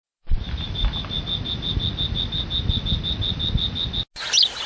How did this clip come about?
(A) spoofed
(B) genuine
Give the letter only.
B